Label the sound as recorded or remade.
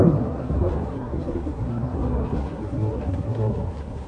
remade